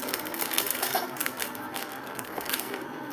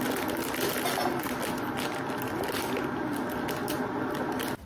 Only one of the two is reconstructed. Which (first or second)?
first